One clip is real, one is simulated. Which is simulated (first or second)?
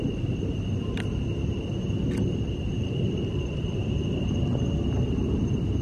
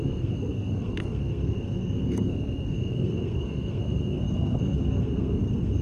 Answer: second